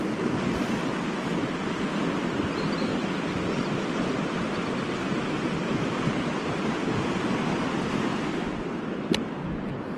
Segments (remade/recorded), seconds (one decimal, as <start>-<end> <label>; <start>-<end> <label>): 0.0-10.0 recorded